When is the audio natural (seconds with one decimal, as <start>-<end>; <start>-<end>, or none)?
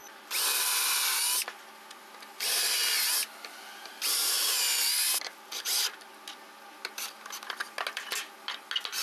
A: 0.0-9.0